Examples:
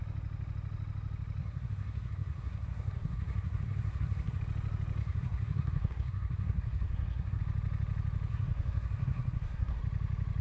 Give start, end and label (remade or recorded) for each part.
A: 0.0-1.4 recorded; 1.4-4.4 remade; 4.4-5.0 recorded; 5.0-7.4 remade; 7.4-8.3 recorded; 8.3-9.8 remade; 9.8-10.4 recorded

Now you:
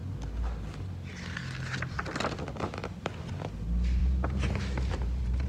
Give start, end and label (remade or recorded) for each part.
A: 0.0-4.0 recorded; 4.0-5.5 remade